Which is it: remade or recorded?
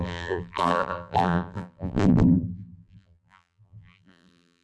remade